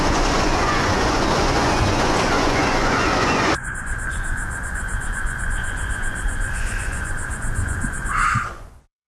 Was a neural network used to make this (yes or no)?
yes